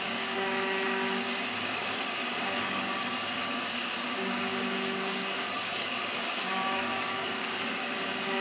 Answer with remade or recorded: remade